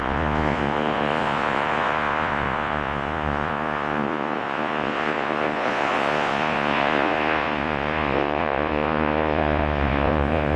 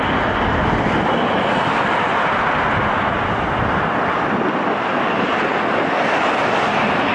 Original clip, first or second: second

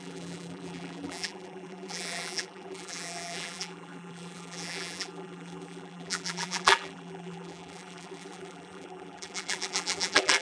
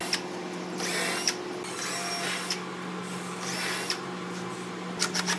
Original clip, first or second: second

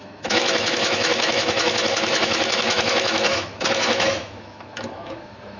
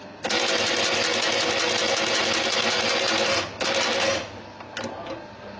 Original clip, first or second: second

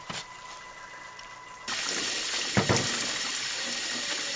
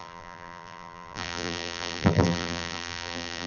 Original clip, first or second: first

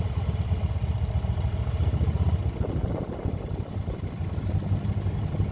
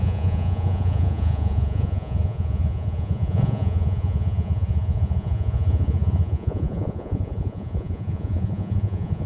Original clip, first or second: first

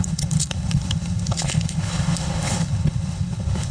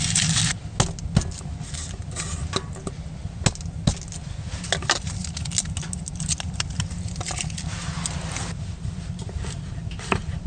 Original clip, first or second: second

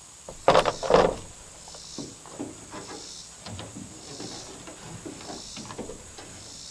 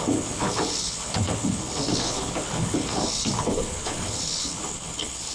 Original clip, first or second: first